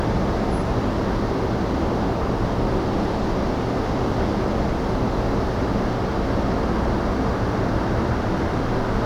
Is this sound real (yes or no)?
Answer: yes